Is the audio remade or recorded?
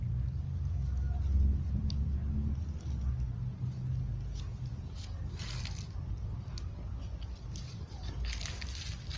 recorded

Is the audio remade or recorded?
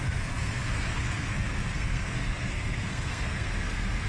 remade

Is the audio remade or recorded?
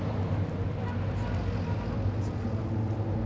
recorded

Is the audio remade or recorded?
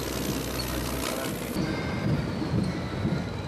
recorded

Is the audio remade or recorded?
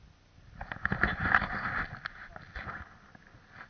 recorded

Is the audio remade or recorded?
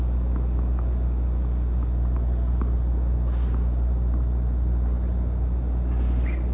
recorded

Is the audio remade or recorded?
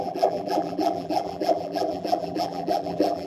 remade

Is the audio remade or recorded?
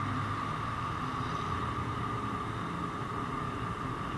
recorded